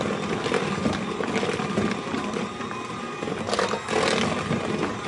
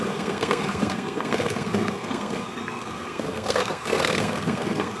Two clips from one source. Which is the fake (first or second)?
second